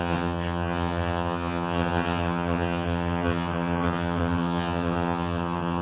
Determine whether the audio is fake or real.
fake